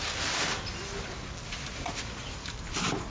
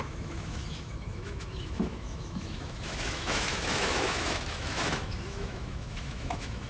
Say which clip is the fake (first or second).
second